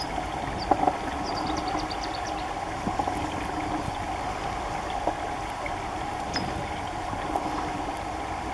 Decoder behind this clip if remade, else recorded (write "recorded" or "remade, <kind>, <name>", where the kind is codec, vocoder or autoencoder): recorded